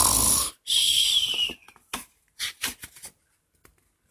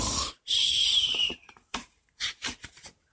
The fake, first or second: second